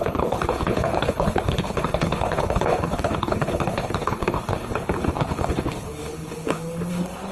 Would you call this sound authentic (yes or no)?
no